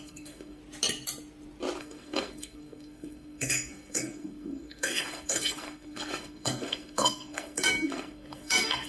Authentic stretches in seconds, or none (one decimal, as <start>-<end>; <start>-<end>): 0.6-1.8